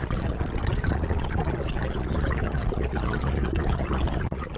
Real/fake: fake